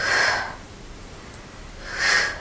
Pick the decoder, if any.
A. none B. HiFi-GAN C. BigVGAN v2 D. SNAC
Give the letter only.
A